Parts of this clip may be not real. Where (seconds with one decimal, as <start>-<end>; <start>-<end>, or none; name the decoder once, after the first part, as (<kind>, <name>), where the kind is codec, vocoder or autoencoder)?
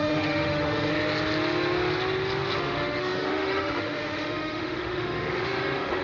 0.0-0.9 (autoencoder, DAC-VAE); 2.6-6.0